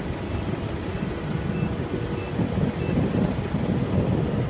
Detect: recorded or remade recorded